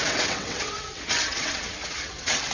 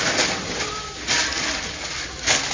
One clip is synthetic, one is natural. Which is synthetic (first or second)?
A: first